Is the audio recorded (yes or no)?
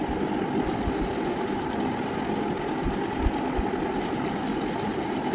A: yes